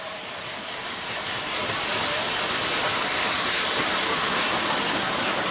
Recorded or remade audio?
recorded